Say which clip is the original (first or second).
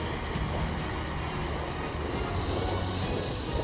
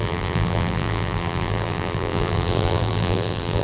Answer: first